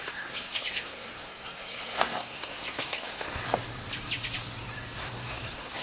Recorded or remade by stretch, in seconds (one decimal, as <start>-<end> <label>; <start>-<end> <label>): 0.0-3.4 remade; 3.4-5.0 recorded; 5.0-5.8 remade